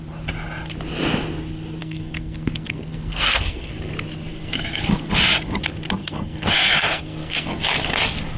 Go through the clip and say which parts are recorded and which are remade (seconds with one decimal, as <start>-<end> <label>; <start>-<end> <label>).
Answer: 0.0-1.8 recorded; 1.8-3.9 remade; 3.9-4.3 recorded; 4.3-5.1 remade; 5.1-6.0 recorded; 6.0-8.0 remade; 8.0-8.4 recorded